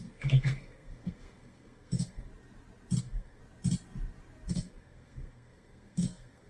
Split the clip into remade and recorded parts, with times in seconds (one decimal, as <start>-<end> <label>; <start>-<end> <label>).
0.0-2.3 remade; 2.3-3.0 recorded; 3.0-3.4 remade; 3.4-4.5 recorded; 4.5-6.5 remade